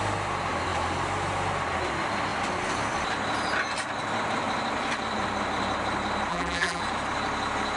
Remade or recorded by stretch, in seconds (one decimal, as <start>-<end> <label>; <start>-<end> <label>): 0.0-6.3 recorded; 6.3-6.8 remade; 6.8-7.8 recorded